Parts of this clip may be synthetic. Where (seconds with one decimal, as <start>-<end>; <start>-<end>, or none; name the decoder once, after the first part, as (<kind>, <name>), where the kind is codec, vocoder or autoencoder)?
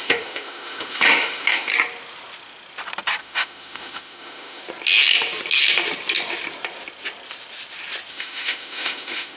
0.0-1.7 (autoencoder, DAC-VAE); 3.2-4.6; 8.1-9.4